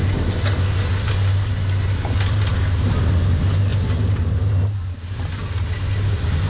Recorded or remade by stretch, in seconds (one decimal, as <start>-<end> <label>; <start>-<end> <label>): 0.0-6.5 recorded